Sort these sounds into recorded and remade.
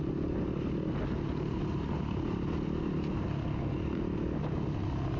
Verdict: recorded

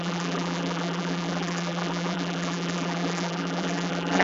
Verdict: remade